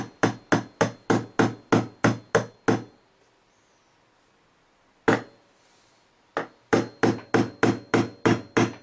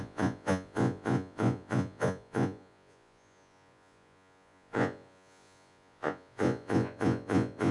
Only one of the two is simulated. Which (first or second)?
second